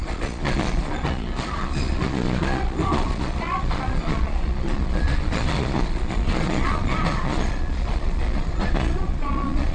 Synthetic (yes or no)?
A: yes